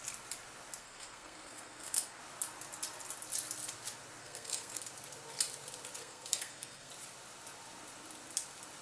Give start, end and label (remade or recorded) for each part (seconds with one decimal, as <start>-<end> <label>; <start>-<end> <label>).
0.0-0.8 recorded; 0.8-2.2 remade; 2.2-4.2 recorded; 4.2-4.8 remade; 4.8-6.0 recorded; 6.0-6.9 remade; 6.9-8.8 recorded